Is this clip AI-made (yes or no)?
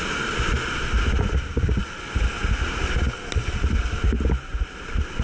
no